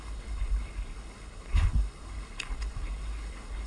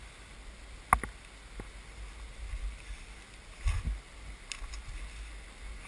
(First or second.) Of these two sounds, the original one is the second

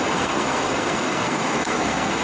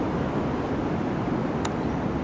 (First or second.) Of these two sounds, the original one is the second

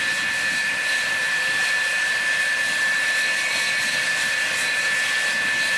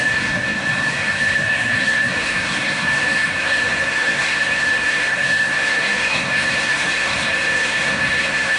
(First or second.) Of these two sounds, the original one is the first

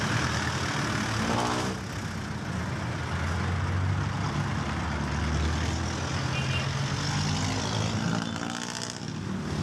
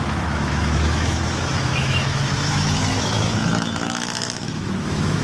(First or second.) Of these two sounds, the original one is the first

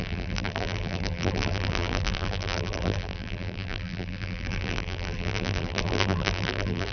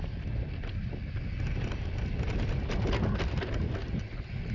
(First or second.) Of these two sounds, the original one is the second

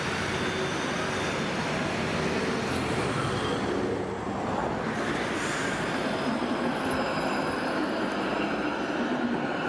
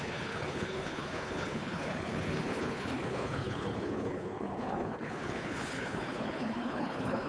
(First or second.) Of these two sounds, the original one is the first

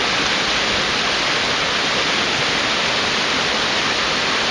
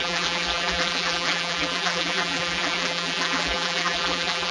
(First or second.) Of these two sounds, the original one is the first